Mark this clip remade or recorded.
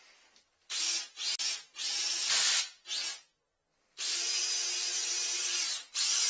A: recorded